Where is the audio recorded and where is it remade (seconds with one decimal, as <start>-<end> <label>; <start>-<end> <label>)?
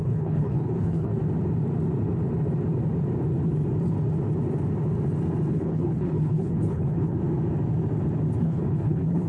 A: 0.0-1.1 remade; 1.1-5.5 recorded; 5.5-7.2 remade; 7.2-8.4 recorded; 8.4-9.3 remade